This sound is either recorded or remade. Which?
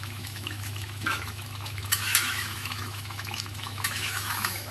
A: remade